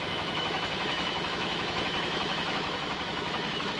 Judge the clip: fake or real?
fake